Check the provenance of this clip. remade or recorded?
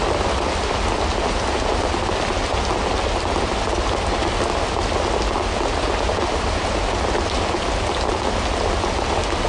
recorded